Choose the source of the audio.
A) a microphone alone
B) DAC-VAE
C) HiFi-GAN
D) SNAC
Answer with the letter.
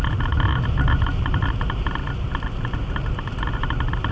A